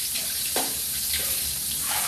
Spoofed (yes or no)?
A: yes